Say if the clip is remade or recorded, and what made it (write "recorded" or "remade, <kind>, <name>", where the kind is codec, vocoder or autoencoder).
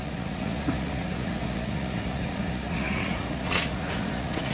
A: remade, vocoder, Vocos